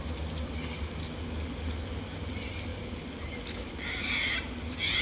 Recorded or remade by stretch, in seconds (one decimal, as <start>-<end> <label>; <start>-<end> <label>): 0.0-5.0 recorded